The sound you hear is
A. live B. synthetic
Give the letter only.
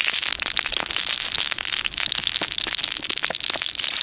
A